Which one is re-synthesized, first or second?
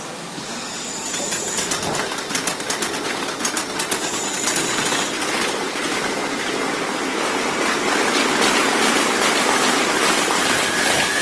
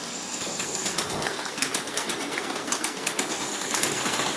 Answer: second